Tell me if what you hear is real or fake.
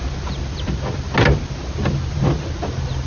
real